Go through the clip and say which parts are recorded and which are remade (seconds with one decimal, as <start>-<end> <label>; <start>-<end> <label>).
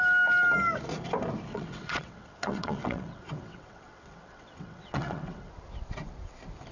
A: 0.0-1.5 recorded; 1.5-5.5 remade; 5.5-6.7 recorded